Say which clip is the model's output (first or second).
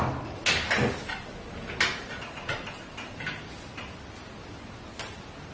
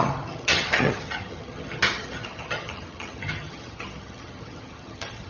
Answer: second